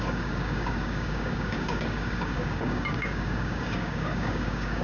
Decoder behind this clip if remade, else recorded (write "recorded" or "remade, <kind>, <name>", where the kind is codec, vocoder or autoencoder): remade, codec, DAC